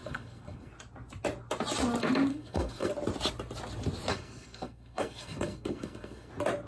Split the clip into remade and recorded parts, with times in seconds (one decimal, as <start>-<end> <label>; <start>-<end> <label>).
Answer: 0.0-0.7 remade; 0.7-2.3 recorded; 2.3-2.9 remade; 2.9-4.1 recorded; 4.1-6.3 remade; 6.3-6.7 recorded